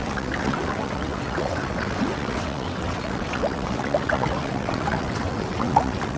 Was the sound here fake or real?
fake